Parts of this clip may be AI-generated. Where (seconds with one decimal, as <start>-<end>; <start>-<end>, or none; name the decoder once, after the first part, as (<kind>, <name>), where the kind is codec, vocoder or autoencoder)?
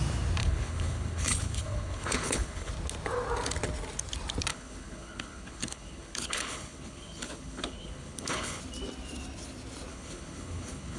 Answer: 0.4-2.7 (codec, HILCodec); 4.5-8.6; 9.9-11.0